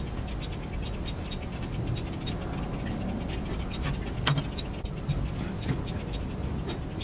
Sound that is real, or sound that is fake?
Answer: real